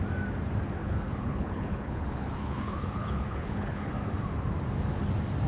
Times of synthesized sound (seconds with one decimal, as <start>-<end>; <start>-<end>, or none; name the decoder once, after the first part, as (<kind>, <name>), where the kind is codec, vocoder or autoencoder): 0.8-3.9 (codec, HILCodec)